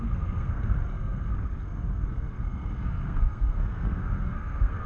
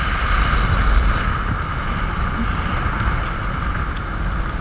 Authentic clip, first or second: second